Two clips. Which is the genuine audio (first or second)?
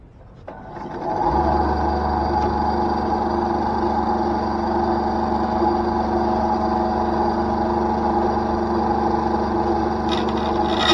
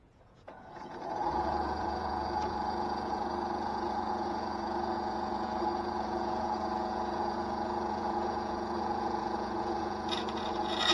first